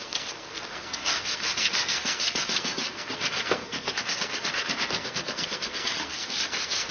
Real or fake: fake